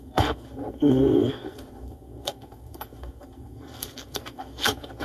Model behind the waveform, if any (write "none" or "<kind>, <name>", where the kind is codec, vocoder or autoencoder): codec, SNAC